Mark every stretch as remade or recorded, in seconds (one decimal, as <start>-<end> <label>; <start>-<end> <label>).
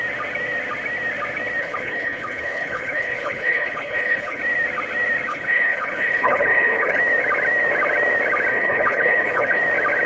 0.0-1.6 recorded; 1.6-4.4 remade; 4.4-5.3 recorded; 5.3-7.0 remade; 7.0-8.5 recorded; 8.5-9.6 remade; 9.6-10.1 recorded